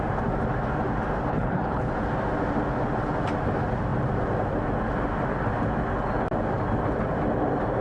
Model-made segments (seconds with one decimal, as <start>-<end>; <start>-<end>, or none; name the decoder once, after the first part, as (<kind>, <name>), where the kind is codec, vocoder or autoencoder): 1.3-1.9 (codec, HILCodec)